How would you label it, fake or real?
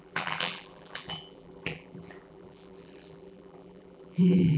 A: fake